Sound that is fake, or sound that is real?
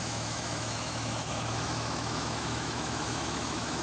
fake